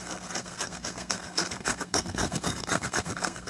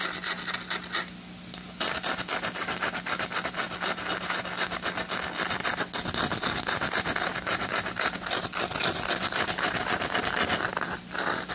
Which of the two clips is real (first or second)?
second